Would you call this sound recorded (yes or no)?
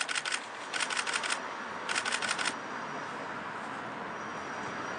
yes